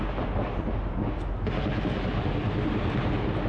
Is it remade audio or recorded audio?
recorded